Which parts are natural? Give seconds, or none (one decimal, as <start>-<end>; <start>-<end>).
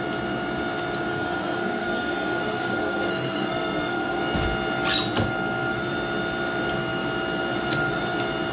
0.0-1.1; 4.2-8.5